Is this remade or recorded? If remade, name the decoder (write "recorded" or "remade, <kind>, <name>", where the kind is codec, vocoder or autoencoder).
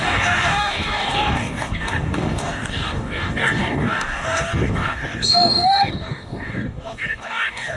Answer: remade, codec, DAC